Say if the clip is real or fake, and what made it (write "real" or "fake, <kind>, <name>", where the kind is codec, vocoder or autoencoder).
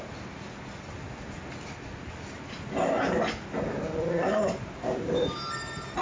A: real